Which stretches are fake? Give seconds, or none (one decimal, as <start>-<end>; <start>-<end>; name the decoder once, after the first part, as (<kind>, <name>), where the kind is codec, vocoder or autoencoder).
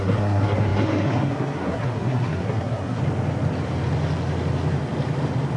0.0-3.0 (codec, SNAC)